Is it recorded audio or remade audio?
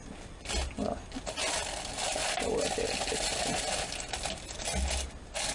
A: recorded